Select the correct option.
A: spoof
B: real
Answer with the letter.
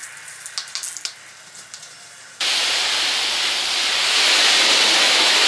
B